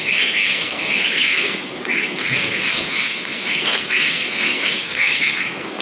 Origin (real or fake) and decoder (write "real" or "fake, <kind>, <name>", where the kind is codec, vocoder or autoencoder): fake, codec, SNAC